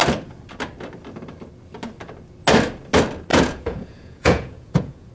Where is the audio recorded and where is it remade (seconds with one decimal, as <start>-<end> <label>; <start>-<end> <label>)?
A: 0.0-3.3 recorded; 3.3-5.1 remade